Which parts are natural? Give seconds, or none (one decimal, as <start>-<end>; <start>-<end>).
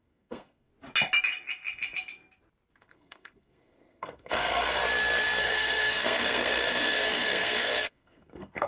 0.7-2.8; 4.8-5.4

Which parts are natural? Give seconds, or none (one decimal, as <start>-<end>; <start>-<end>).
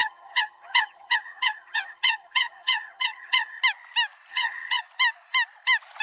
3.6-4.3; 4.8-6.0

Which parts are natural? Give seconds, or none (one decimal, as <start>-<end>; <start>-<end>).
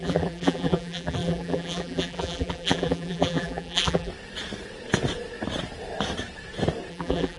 4.1-6.9